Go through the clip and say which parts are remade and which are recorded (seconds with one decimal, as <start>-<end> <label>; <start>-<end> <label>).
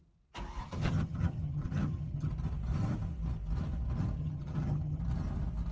0.0-0.6 recorded; 0.6-2.3 remade; 2.3-4.2 recorded; 4.2-5.0 remade; 5.0-5.7 recorded